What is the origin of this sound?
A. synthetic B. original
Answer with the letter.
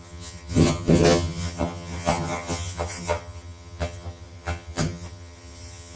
A